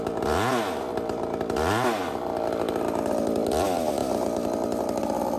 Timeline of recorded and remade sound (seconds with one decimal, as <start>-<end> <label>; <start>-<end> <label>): 0.0-5.4 recorded